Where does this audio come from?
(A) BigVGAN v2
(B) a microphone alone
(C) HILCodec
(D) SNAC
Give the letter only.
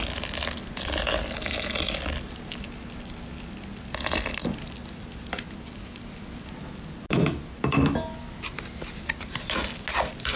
B